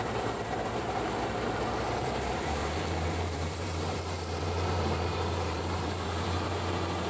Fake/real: fake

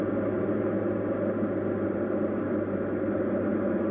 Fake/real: real